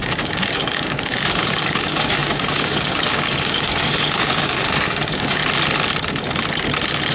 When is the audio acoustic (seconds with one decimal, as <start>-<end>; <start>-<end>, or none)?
5.4-7.1